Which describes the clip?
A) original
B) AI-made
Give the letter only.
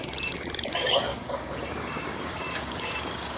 B